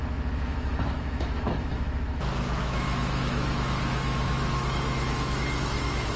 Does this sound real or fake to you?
fake